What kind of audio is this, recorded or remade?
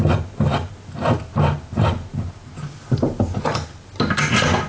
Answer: recorded